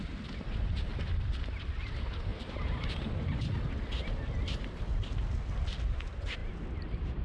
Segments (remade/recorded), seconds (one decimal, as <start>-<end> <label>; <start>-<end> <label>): 0.0-2.3 recorded; 2.3-2.9 remade; 2.9-7.2 recorded